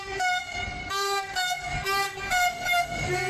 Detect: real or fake fake